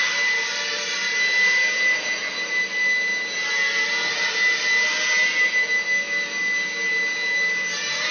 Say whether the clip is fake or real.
real